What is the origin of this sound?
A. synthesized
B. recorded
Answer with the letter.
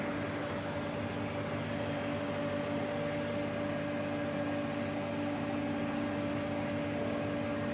B